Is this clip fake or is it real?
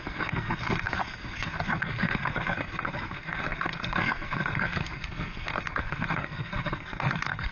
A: fake